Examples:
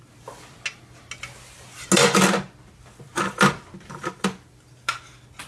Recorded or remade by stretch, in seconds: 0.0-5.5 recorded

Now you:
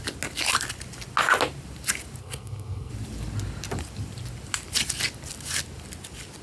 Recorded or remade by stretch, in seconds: 0.0-2.2 recorded; 2.2-2.9 remade; 2.9-6.4 recorded